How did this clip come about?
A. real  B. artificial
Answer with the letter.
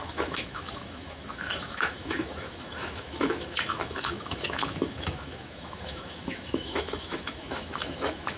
B